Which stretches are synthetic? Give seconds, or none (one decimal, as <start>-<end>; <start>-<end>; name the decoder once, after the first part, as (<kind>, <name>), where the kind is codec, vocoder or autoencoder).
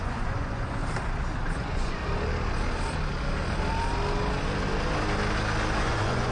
0.0-0.8 (vocoder, Vocos); 1.5-2.0; 5.8-6.3